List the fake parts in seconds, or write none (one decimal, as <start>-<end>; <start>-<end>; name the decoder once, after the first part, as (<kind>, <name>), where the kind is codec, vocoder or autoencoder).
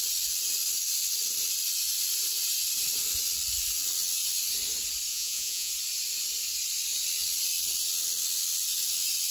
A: 5.1-5.7 (vocoder, Vocos)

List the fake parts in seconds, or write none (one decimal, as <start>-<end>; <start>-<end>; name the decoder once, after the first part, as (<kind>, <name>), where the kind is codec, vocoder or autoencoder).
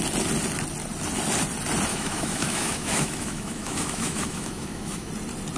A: 1.9-5.1 (autoencoder, DAC-VAE)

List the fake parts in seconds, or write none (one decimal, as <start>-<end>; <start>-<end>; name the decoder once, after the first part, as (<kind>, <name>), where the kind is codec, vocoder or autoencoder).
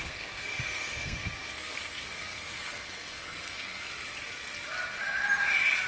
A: 0.0-3.9 (codec, SNAC)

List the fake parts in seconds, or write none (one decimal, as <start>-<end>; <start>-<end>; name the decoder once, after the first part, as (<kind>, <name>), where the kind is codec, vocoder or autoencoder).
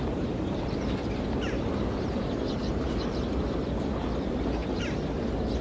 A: 0.0-4.6 (vocoder, BigVGAN v2)